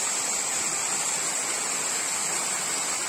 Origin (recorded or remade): recorded